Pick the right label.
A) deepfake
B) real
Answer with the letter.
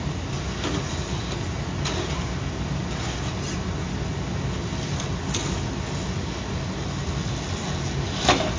B